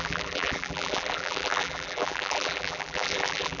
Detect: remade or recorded remade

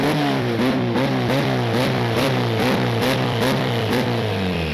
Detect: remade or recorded remade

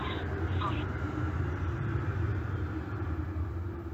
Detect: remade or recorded remade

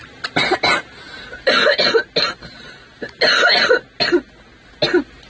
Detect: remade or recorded recorded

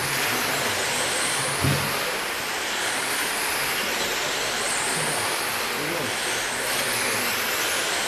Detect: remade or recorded recorded